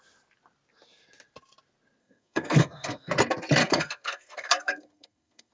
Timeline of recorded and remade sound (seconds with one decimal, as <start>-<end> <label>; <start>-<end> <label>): 0.0-2.0 recorded; 2.0-3.1 remade; 3.1-3.6 recorded; 3.6-5.5 remade